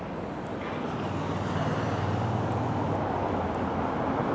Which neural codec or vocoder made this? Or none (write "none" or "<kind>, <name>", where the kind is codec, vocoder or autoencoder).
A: none